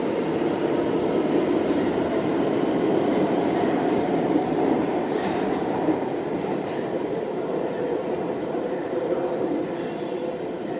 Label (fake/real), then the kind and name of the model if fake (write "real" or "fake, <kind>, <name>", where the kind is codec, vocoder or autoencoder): fake, vocoder, BigVGAN v2